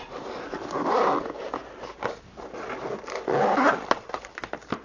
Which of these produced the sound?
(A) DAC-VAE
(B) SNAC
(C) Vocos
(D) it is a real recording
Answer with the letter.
D